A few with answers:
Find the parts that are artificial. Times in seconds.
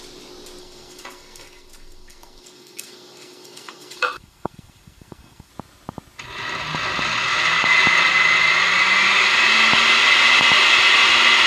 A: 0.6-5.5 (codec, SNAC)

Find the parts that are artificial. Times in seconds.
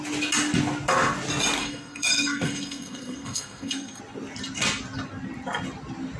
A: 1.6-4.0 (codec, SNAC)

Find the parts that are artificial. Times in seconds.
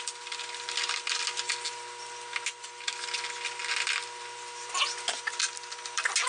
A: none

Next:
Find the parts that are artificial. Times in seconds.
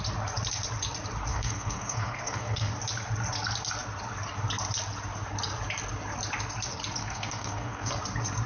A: 1.3-2.7 (codec, SNAC); 7.0-7.9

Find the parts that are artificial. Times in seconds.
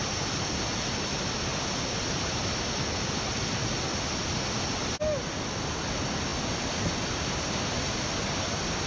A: none